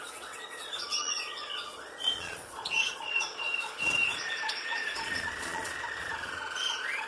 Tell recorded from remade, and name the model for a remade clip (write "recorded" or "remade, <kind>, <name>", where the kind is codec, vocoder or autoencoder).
remade, vocoder, Vocos